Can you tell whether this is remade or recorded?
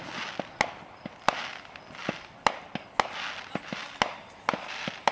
recorded